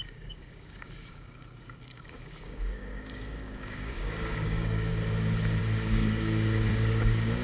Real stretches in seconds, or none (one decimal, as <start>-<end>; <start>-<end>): 4.9-5.6